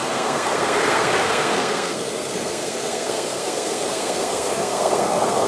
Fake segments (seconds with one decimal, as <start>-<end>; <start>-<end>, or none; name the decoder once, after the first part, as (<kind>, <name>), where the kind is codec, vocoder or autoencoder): 0.0-5.5 (codec, SNAC)